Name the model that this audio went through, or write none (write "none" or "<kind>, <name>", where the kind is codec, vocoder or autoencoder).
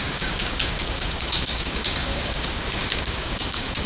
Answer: codec, DAC